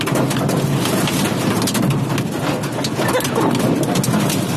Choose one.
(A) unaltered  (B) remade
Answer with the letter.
A